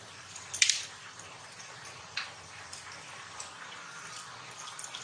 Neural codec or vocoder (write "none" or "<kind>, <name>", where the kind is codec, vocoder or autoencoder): vocoder, BigVGAN v2